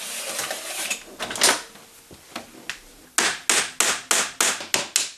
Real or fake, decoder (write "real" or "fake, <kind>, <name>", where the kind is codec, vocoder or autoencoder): real